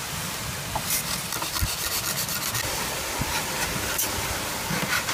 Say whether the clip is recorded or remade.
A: recorded